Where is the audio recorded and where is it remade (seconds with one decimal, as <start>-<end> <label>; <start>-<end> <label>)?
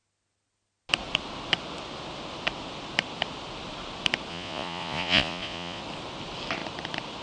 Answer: 0.0-4.3 recorded; 4.3-5.8 remade; 5.8-7.2 recorded